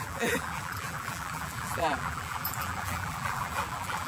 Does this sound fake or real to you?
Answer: fake